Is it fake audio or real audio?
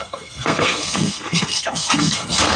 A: fake